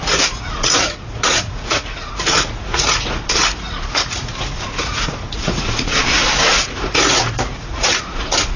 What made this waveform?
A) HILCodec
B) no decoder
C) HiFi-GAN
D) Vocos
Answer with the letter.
D